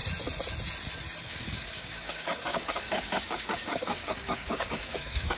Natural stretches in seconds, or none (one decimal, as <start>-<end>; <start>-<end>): 0.0-1.2